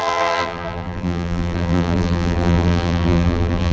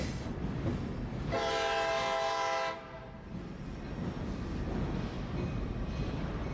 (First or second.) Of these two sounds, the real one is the second